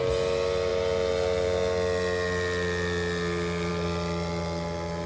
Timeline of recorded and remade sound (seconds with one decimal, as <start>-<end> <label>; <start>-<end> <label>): 0.0-5.1 recorded